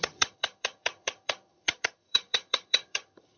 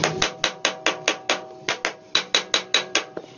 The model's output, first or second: first